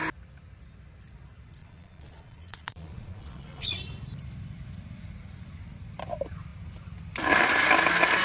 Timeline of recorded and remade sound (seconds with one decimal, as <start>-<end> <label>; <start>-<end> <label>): 0.0-1.6 recorded; 1.6-3.8 remade; 3.8-8.2 recorded